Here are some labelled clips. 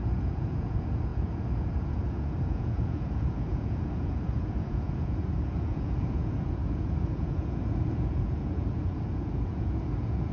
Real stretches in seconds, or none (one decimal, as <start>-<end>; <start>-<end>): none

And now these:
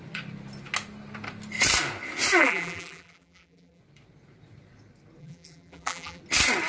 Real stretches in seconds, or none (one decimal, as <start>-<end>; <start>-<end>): 0.0-2.4; 3.8-5.2; 6.2-6.7

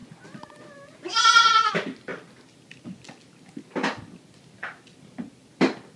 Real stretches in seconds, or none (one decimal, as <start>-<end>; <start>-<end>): 0.0-6.0

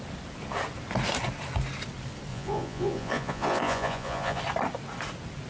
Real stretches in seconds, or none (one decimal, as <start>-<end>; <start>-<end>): 0.0-2.3; 4.4-5.5

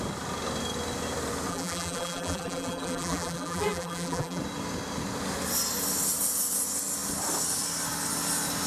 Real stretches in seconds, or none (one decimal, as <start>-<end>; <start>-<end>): 0.0-1.5; 4.4-8.7